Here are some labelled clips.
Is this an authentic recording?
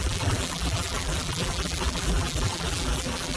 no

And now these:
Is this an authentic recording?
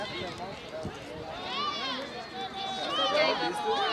yes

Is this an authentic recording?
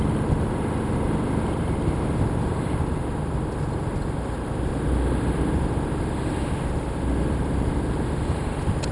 yes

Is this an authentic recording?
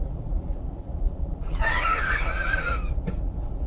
no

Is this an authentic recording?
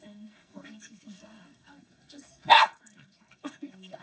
no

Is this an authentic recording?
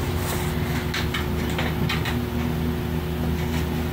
yes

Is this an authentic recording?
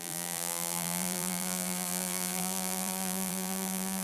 no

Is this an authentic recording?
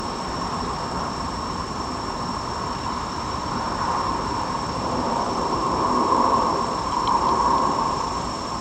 no